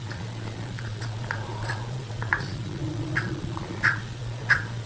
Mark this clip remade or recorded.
remade